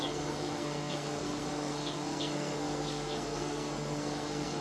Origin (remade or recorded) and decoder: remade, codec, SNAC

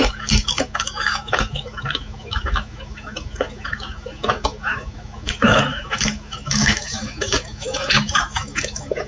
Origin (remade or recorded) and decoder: remade, autoencoder, DAC-VAE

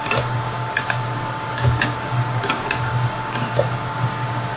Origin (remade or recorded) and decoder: remade, codec, DAC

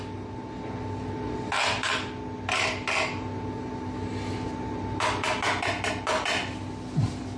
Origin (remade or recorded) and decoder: recorded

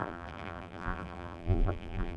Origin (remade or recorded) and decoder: remade, vocoder, BigVGAN v2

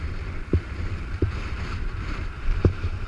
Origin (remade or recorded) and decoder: remade, vocoder, BigVGAN v2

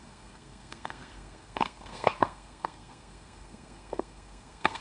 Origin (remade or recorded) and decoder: remade, codec, SNAC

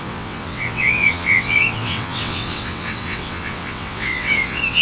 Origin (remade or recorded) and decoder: remade, vocoder, WaveNeXt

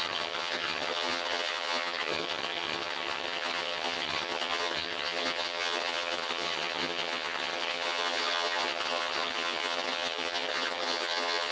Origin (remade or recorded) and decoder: remade, vocoder, HiFi-GAN